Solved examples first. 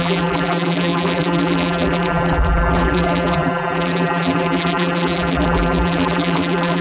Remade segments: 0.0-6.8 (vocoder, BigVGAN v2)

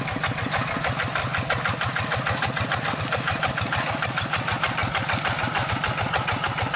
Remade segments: none

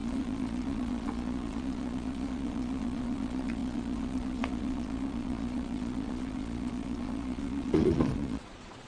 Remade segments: 0.0-8.9 (vocoder, Vocos)

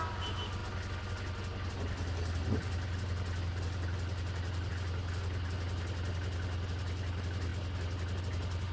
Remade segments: none

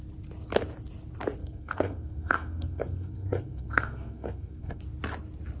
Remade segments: 1.4-4.8 (codec, SNAC)